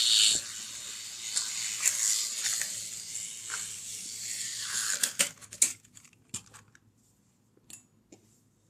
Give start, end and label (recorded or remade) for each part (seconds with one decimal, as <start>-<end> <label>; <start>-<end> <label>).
0.0-3.7 recorded; 3.7-6.2 remade; 6.2-8.7 recorded